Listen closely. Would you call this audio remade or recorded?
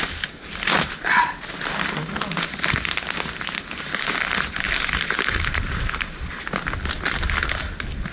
recorded